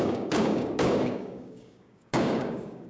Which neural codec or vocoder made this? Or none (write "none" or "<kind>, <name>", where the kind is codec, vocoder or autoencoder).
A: codec, DAC